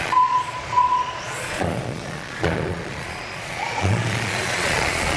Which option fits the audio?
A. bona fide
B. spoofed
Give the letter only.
B